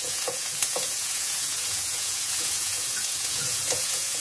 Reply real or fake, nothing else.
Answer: fake